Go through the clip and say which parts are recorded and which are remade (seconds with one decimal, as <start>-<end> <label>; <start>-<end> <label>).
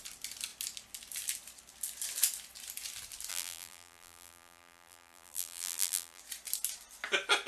0.0-3.3 recorded; 3.3-6.2 remade; 6.2-7.5 recorded